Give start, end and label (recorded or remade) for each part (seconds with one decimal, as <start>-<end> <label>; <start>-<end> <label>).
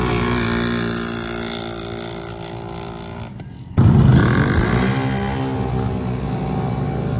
0.0-7.2 recorded